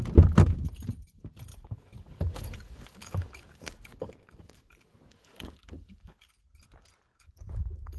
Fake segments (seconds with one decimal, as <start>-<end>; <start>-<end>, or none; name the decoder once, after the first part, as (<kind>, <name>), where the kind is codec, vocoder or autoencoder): 1.5-6.3 (codec, DAC); 7.1-8.0